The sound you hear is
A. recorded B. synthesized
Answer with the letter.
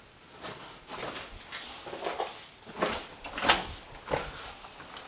A